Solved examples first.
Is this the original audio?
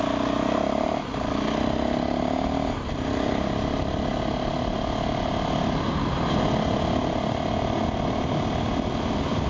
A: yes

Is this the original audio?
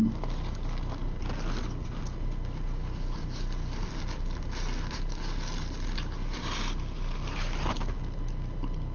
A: yes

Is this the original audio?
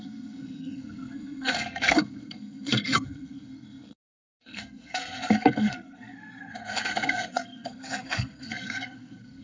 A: no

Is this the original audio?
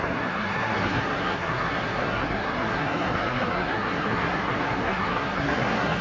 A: no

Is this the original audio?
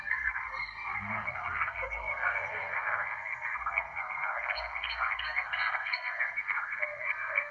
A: no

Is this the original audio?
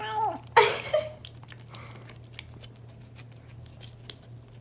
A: yes